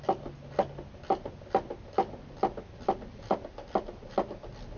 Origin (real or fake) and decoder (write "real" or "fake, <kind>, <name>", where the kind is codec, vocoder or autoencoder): real